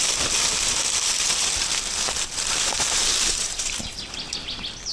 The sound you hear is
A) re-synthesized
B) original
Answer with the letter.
B